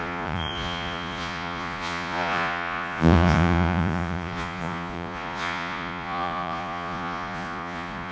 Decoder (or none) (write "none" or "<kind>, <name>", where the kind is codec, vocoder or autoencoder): vocoder, Vocos